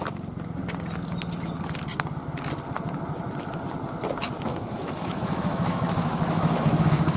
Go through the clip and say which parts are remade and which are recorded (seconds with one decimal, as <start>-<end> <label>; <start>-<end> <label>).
0.0-4.5 recorded; 4.5-7.2 remade